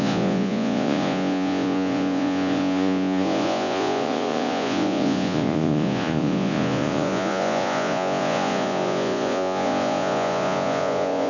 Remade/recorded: remade